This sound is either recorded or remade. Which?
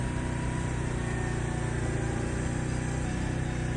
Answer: recorded